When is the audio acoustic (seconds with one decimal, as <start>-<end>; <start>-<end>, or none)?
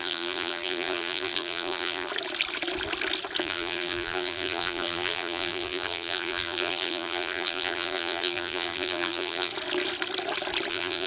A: 2.1-3.4; 9.5-10.7